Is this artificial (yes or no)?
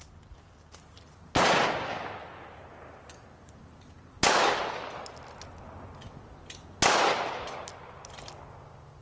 no